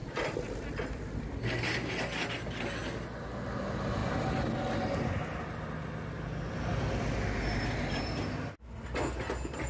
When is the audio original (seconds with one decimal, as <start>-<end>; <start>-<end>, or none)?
0.0-9.7